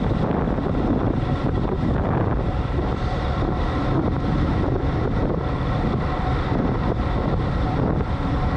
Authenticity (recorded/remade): remade